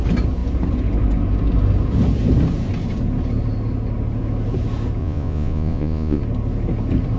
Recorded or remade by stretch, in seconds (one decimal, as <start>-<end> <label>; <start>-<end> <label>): 0.0-5.0 recorded; 5.0-6.2 remade; 6.2-7.2 recorded